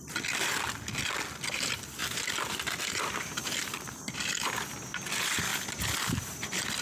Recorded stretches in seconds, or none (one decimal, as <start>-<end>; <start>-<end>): 0.0-2.0; 4.3-5.5

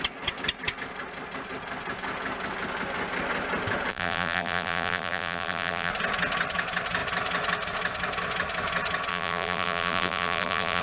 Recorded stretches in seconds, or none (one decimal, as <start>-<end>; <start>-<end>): 0.0-3.9; 5.9-9.1

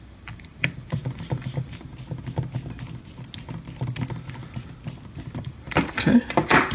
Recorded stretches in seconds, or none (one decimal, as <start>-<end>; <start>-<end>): 1.9-5.4

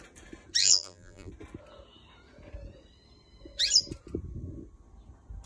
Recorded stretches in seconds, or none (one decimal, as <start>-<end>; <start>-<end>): 0.0-0.6; 1.3-5.5

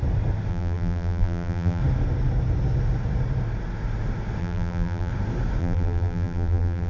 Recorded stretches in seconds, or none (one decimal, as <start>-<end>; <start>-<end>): 0.0-0.5; 1.8-4.4; 5.1-5.6

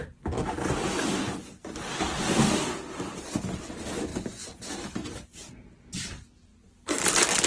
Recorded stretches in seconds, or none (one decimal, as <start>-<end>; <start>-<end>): 0.0-1.8; 4.1-5.7; 6.5-7.5